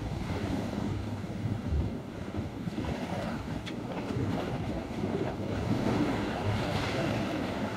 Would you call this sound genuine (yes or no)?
no